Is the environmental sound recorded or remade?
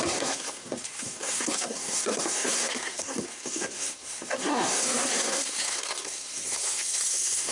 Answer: remade